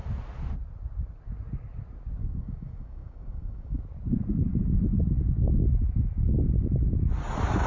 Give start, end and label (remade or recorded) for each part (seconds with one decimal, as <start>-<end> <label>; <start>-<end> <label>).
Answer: 0.0-2.2 recorded; 2.2-3.8 remade; 3.8-7.7 recorded